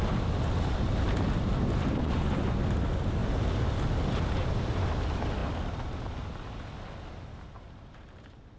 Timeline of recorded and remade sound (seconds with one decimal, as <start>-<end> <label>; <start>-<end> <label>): 0.0-2.0 recorded; 2.0-2.6 remade; 2.6-8.6 recorded